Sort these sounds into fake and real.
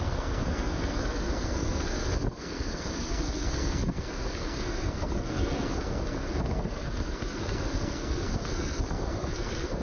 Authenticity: fake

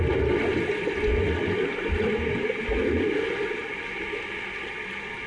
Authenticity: real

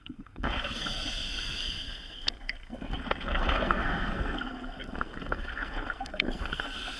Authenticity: fake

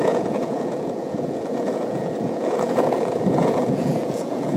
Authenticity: fake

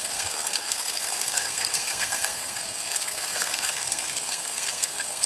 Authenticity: fake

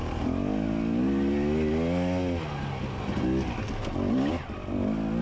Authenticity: real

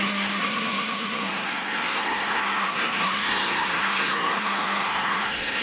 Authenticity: fake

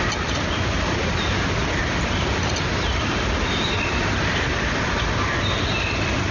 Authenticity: real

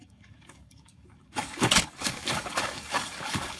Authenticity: fake